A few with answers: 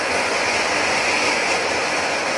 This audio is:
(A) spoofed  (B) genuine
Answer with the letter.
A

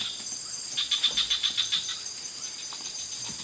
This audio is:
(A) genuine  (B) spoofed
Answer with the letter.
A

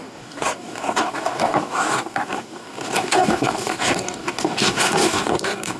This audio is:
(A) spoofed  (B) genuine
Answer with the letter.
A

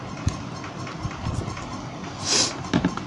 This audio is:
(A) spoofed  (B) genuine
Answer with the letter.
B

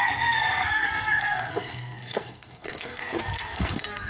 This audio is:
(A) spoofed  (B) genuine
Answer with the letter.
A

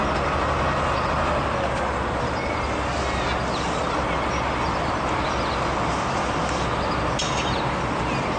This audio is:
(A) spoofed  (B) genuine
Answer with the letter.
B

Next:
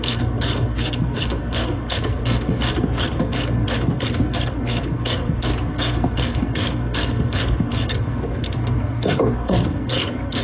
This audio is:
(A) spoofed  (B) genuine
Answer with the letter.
A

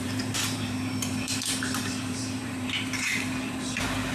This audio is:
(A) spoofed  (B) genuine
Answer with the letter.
A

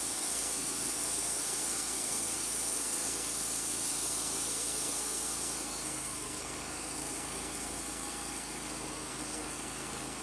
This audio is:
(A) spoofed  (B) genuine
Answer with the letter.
A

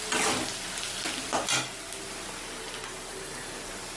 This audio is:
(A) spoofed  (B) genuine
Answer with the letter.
B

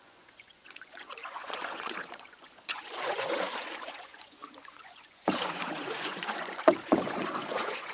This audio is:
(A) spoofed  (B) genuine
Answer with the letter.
A